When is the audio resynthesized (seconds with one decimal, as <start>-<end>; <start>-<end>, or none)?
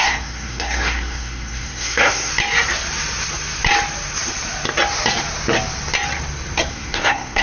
0.0-2.3; 6.7-7.4